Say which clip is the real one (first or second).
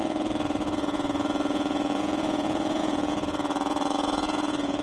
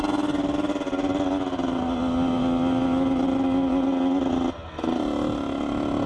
second